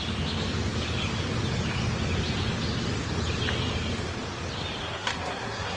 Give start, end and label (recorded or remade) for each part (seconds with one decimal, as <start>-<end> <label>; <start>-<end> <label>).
0.0-4.8 recorded; 4.8-5.8 remade